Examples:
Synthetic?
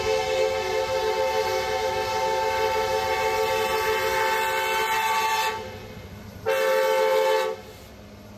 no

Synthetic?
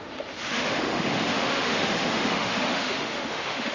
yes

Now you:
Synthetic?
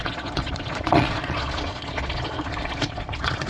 yes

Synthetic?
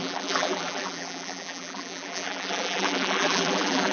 yes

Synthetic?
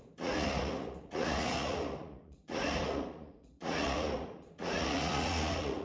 yes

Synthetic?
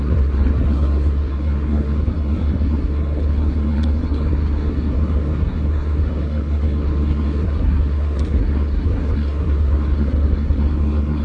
yes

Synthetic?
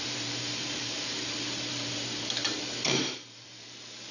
yes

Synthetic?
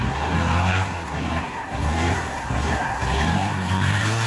yes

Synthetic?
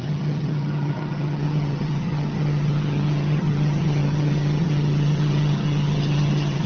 yes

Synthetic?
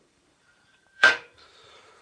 yes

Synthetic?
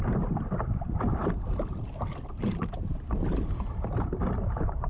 no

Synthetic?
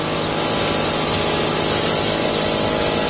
no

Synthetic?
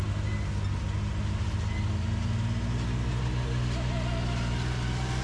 no